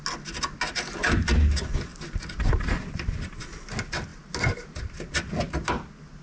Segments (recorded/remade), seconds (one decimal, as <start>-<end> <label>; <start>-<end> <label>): 0.0-6.2 recorded